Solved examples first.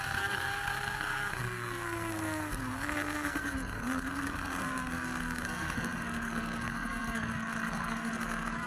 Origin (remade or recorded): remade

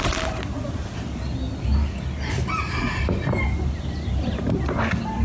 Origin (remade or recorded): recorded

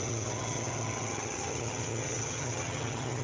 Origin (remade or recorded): remade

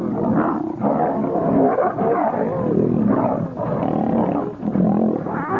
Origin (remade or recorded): recorded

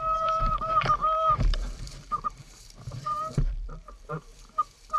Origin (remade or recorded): remade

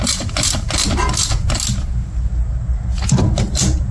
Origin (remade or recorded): recorded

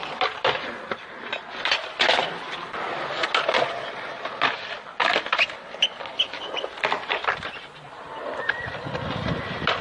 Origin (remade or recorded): recorded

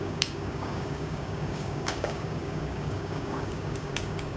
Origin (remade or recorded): remade